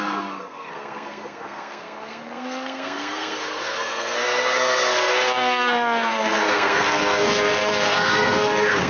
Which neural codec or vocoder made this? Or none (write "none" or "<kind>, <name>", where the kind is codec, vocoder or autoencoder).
codec, SNAC